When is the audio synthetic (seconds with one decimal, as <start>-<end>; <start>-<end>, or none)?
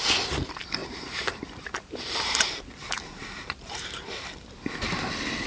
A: 0.8-4.1